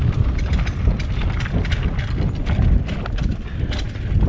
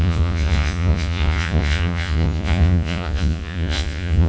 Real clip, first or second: first